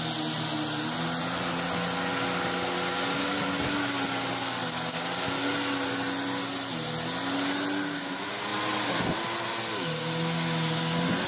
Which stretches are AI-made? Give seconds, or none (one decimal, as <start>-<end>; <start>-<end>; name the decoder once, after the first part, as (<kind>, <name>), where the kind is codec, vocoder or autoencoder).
none